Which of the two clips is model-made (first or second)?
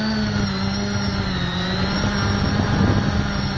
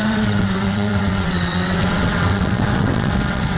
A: second